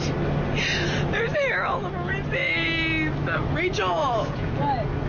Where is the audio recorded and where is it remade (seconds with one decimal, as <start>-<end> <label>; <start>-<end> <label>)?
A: 0.0-3.7 recorded; 3.7-4.6 remade; 4.6-5.1 recorded